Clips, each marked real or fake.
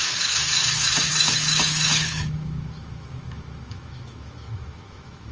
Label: fake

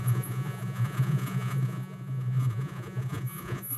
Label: fake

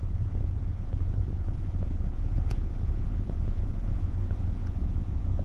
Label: fake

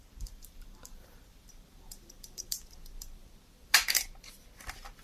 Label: fake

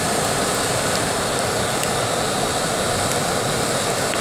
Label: real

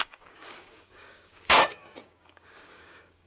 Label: fake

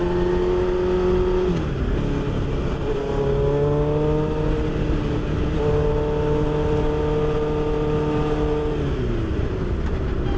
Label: real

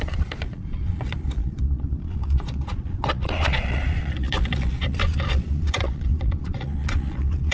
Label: fake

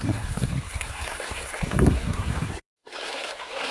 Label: fake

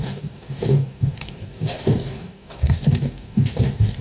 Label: fake